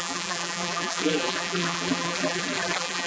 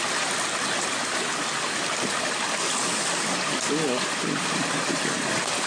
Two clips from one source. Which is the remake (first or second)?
first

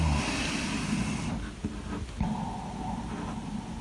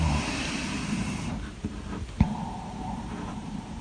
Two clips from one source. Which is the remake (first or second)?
second